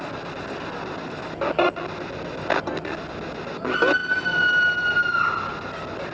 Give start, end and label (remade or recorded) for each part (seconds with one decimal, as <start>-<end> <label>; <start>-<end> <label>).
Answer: 0.0-6.1 recorded